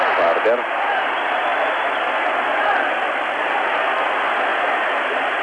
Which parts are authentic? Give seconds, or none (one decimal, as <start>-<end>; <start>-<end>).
0.0-5.4

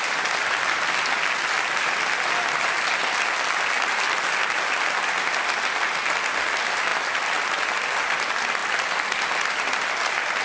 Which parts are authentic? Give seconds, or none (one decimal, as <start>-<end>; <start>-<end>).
0.0-10.4